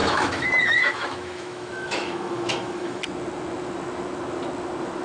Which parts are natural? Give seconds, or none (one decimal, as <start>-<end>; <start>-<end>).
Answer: 3.0-5.0